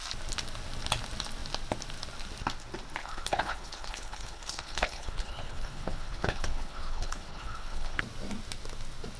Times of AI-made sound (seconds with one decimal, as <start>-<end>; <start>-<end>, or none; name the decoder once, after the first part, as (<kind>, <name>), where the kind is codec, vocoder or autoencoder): 3.0-8.0 (codec, HILCodec)

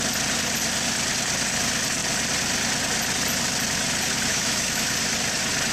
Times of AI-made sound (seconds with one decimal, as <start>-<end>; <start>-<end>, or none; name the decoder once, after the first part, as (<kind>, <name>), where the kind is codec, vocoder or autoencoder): 4.3-4.9 (autoencoder, DAC-VAE)

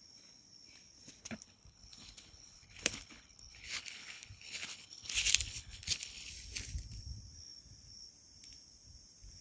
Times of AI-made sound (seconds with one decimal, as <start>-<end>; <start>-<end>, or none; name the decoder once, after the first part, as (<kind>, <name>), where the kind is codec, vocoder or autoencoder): 1.2-6.3 (codec, HILCodec)

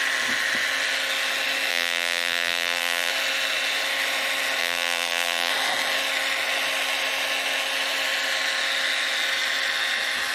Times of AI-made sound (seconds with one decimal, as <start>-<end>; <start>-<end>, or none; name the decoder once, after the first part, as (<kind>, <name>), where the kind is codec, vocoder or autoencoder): 1.7-3.1 (vocoder, BigVGAN v2); 4.6-5.5

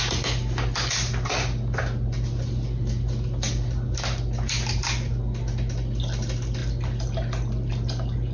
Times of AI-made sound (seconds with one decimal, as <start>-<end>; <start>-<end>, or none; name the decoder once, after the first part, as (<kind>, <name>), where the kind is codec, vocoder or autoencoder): none

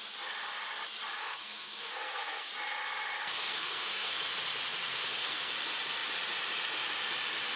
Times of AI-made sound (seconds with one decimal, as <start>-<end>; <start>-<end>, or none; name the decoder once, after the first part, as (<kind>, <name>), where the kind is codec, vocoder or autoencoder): 1.2-2.5 (codec, SNAC); 3.2-4.3; 4.9-5.5

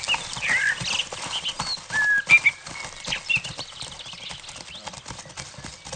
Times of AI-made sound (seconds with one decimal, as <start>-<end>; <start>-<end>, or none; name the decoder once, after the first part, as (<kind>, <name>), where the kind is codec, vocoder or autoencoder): none

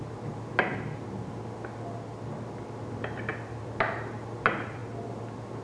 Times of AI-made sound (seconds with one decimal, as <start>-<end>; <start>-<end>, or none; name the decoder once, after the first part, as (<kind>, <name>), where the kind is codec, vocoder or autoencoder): none